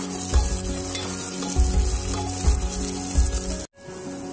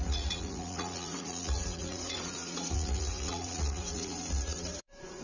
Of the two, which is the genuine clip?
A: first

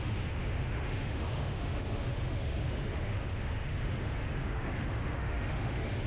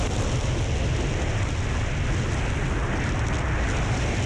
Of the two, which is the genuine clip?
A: second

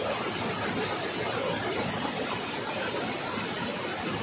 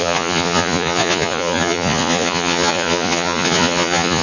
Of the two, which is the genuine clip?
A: first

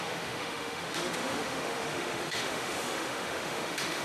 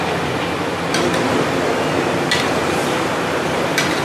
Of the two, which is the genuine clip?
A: second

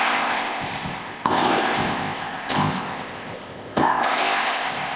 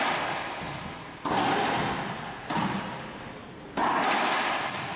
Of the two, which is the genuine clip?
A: second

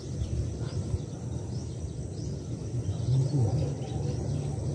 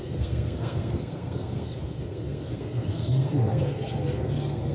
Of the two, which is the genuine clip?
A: first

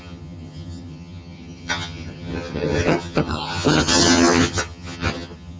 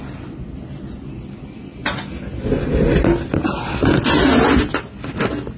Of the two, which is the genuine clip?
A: second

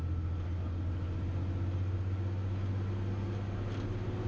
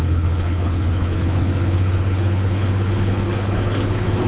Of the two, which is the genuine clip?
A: first